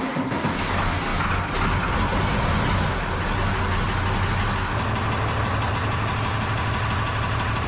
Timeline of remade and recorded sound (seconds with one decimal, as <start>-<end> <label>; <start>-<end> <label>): 0.0-7.7 recorded